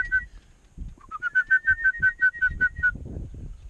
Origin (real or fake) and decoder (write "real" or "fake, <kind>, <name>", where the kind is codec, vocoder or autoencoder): real